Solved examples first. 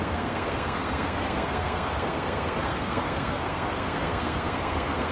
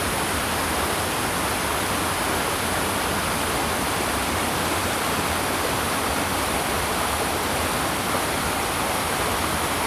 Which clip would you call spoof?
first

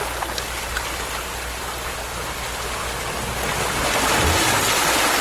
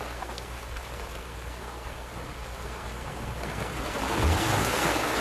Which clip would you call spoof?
second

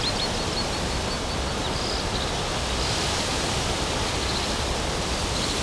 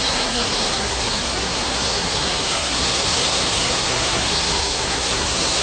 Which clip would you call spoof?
second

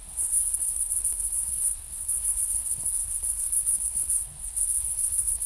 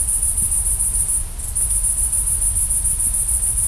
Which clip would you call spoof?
first